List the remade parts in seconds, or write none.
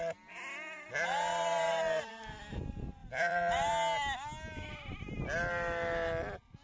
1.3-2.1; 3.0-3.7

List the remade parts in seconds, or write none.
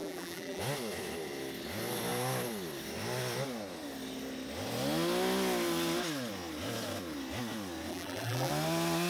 0.0-0.6; 7.9-8.5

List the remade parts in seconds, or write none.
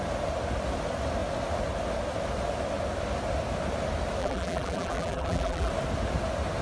4.2-5.7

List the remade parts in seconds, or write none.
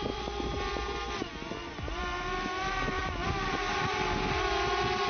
3.0-3.6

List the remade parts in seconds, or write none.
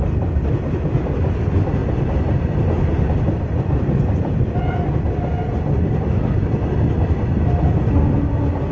1.8-4.1